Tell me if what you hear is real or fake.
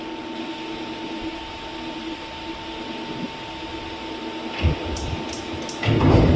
real